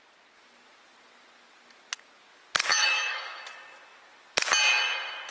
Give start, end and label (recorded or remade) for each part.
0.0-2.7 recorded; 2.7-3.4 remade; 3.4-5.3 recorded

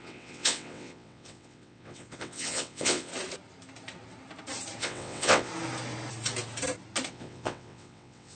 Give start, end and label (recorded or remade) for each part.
0.0-3.1 remade; 3.1-4.8 recorded; 4.8-5.5 remade; 5.5-7.1 recorded; 7.1-8.4 remade

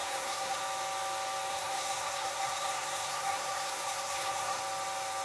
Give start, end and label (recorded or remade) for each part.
0.0-0.6 remade; 0.6-1.5 recorded; 1.5-4.6 remade; 4.6-5.2 recorded

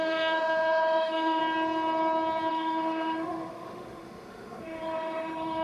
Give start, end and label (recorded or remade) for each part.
0.0-1.4 remade; 1.4-2.5 recorded; 2.5-5.6 remade